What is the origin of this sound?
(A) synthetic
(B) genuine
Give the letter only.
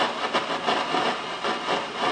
B